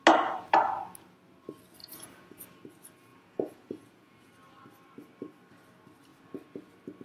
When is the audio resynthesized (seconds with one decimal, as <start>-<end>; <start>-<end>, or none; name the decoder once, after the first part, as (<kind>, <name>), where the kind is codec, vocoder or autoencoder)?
1.8-2.4 (vocoder, Vocos); 3.1-4.3